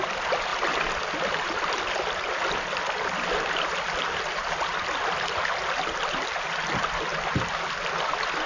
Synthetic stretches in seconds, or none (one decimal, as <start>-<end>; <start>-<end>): none